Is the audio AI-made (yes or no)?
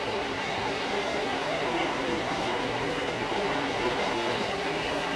yes